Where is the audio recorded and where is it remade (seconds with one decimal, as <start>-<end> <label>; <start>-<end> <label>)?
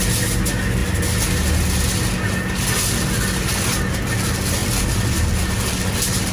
0.0-4.6 recorded; 4.6-5.4 remade; 5.4-6.3 recorded